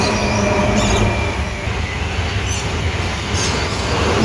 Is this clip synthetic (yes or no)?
no